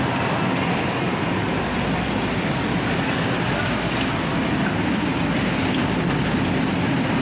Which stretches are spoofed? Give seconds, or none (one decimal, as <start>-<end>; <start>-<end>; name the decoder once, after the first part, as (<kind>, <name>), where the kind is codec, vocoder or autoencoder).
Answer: none